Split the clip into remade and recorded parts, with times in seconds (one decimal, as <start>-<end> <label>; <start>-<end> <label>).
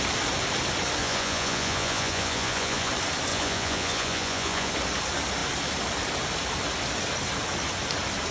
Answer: 0.0-1.0 recorded; 1.0-2.9 remade; 2.9-3.3 recorded; 3.3-4.7 remade; 4.7-8.3 recorded